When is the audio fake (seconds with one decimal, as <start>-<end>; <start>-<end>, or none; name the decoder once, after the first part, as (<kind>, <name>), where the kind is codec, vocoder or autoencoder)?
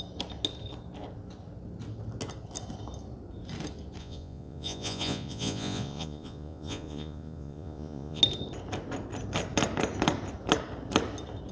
4.0-8.2 (vocoder, Vocos)